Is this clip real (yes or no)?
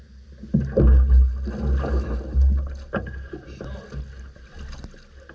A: yes